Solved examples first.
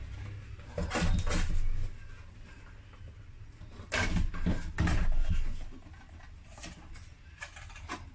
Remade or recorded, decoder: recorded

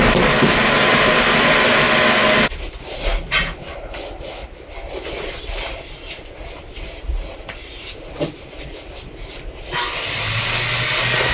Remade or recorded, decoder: recorded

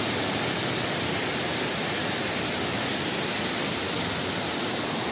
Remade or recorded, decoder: recorded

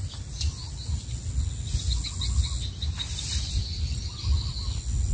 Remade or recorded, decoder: recorded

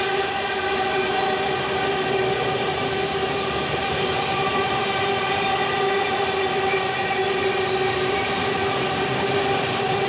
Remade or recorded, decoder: recorded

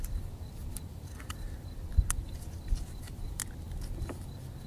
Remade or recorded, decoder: recorded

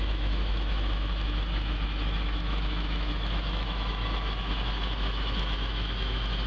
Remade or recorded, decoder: remade, autoencoder, DAC-VAE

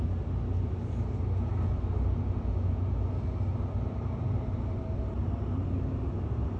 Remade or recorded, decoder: recorded